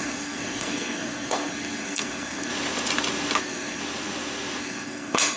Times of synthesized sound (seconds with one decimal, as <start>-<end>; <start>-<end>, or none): 0.0-2.5; 3.4-3.8; 4.6-5.4